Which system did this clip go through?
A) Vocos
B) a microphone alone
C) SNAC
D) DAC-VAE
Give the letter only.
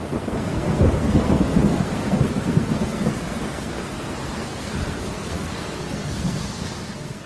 C